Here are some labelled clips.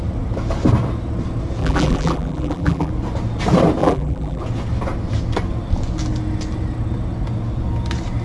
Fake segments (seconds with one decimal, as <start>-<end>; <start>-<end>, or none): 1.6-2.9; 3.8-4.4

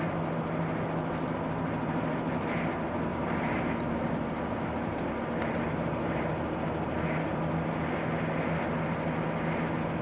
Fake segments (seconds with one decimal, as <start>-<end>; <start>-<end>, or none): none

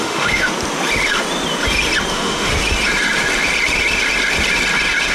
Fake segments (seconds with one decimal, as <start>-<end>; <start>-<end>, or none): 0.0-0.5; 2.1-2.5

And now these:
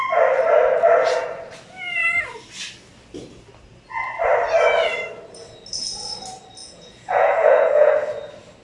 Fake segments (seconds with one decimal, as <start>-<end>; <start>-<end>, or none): 6.6-7.9

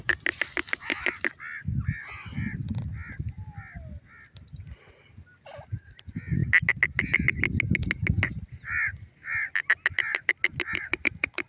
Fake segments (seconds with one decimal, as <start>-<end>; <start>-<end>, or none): none

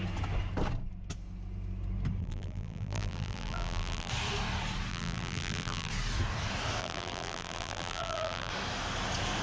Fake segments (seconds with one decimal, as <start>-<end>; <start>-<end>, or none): 2.2-4.1; 4.9-5.9; 6.8-8.5

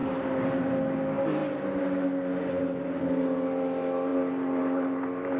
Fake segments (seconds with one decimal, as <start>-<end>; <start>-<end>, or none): 0.0-0.7

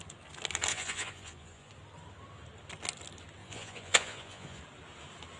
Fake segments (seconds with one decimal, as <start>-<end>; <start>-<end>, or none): 0.7-1.7; 3.4-4.6